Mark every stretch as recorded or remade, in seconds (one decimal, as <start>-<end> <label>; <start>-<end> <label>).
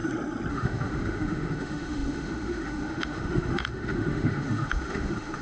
0.0-0.5 recorded; 0.5-5.4 remade